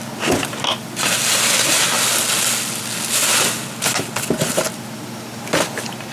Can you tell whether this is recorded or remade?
recorded